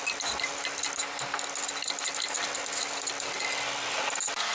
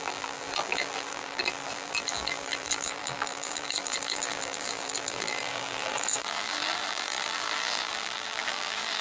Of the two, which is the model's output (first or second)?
second